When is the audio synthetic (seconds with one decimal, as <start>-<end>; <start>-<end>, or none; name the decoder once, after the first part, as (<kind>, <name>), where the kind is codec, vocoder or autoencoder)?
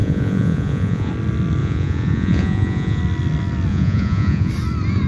0.0-1.1 (vocoder, Vocos); 1.6-3.0; 3.7-4.5